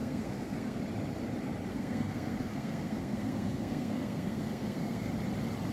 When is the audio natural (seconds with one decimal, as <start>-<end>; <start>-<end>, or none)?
0.8-1.7; 5.1-5.7